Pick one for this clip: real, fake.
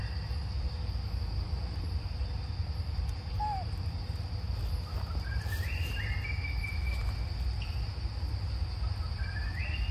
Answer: real